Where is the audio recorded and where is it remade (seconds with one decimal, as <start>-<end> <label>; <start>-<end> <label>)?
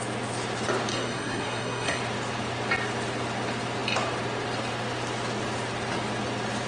0.0-0.9 recorded; 0.9-2.0 remade; 2.0-6.7 recorded